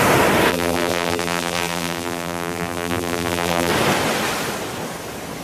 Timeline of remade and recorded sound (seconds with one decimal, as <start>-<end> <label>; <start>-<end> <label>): 0.0-0.5 recorded; 0.5-3.7 remade; 3.7-5.4 recorded